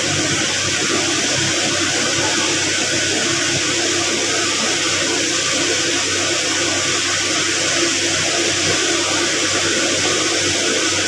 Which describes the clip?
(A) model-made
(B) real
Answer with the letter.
B